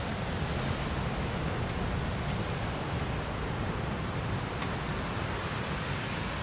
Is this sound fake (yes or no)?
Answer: no